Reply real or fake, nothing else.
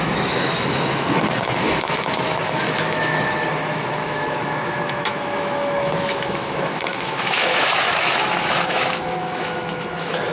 fake